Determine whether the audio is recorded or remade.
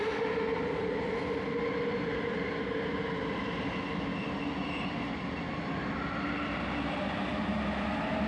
recorded